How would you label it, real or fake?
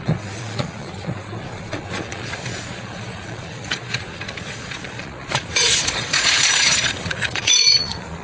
fake